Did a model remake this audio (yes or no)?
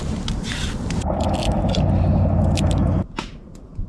no